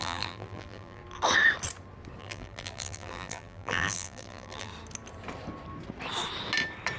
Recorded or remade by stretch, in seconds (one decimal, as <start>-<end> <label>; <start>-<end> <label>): 0.0-1.0 remade; 1.0-2.2 recorded; 2.2-4.7 remade; 4.7-7.0 recorded